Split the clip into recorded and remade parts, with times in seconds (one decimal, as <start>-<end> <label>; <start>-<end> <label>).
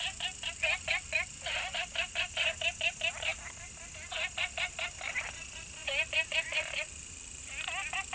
0.0-5.8 recorded; 5.8-7.4 remade; 7.4-8.1 recorded